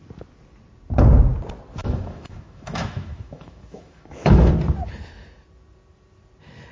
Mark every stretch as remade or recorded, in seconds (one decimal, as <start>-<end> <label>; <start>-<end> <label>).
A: 0.0-1.8 recorded; 1.8-4.5 remade; 4.5-6.7 recorded